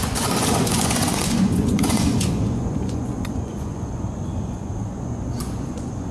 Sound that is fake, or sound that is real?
fake